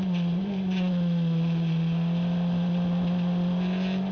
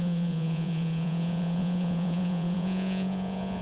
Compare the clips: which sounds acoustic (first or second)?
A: first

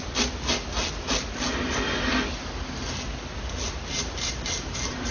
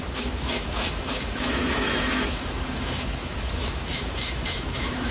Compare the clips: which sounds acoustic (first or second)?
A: first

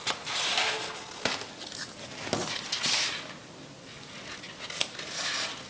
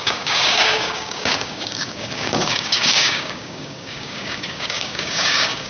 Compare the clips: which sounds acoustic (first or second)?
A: first